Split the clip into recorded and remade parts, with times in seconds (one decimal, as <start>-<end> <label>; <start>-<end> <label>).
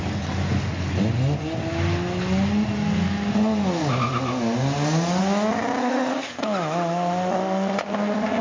0.0-5.8 recorded; 5.8-6.3 remade; 6.3-8.4 recorded